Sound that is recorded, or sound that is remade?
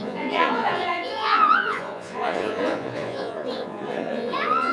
remade